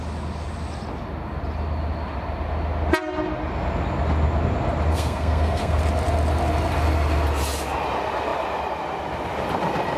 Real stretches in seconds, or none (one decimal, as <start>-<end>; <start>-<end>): 0.0-4.9; 5.8-10.0